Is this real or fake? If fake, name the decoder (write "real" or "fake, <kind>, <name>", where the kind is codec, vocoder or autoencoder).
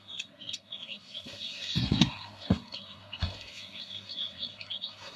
fake, codec, SNAC